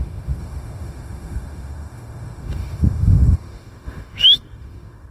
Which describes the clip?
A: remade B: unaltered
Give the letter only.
A